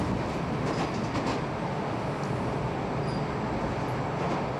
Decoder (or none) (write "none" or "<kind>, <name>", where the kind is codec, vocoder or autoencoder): none